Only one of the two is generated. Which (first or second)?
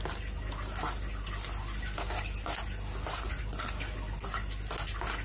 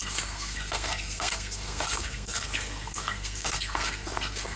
second